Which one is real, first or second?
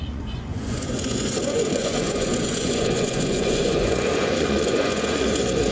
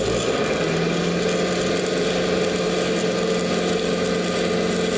second